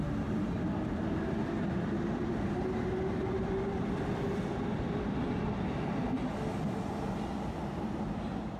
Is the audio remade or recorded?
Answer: recorded